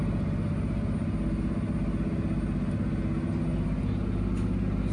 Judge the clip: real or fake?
real